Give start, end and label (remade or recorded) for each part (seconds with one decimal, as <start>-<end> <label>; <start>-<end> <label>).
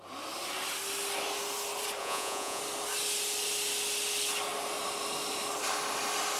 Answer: 0.0-2.0 recorded; 2.0-2.6 remade; 2.6-6.4 recorded